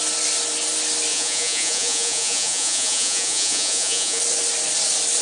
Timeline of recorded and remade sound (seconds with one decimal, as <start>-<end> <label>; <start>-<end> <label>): 0.0-1.1 recorded; 1.1-4.2 remade; 4.2-5.2 recorded